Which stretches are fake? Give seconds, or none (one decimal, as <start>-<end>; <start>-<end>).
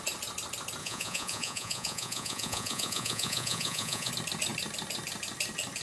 0.8-4.1